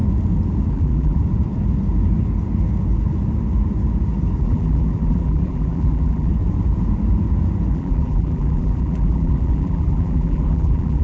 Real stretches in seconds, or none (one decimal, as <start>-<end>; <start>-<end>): 0.0-0.7; 1.2-4.4; 6.3-7.7